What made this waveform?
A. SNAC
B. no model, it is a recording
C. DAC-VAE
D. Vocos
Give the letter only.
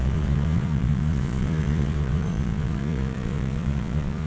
D